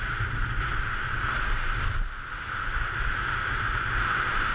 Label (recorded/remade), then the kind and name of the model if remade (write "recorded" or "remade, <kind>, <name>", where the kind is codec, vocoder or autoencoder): recorded